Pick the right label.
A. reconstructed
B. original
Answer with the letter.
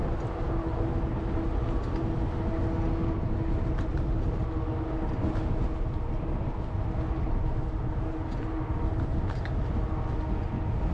B